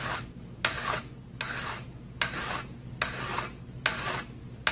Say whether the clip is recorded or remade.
recorded